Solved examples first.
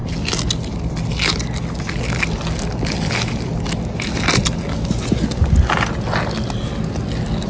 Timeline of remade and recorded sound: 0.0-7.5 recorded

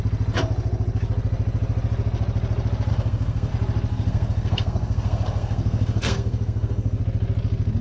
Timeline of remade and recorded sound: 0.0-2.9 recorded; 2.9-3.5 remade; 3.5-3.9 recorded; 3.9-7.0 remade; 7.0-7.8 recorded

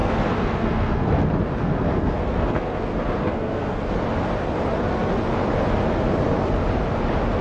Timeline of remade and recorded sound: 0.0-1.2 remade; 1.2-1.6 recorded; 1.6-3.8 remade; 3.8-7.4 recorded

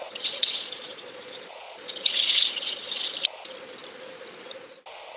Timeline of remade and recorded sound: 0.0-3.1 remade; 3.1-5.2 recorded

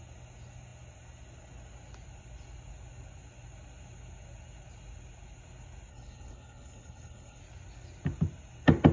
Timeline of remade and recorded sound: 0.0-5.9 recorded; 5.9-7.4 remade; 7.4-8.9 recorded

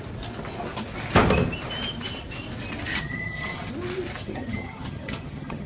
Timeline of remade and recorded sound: 0.0-2.9 recorded; 2.9-3.7 remade; 3.7-4.2 recorded; 4.2-5.7 remade

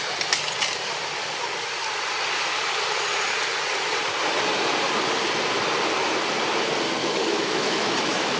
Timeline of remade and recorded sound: 0.0-7.0 recorded; 7.0-8.4 remade

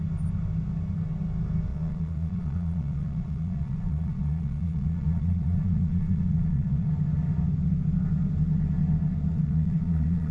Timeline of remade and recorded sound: 0.0-1.7 recorded; 1.7-6.9 remade; 6.9-9.3 recorded; 9.3-10.3 remade